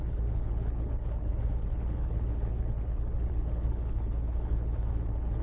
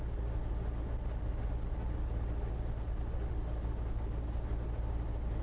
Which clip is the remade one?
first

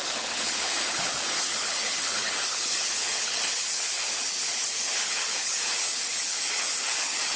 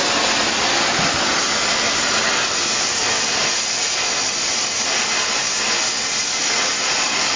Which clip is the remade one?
first